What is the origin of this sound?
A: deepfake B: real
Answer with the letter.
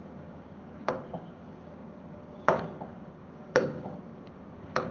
A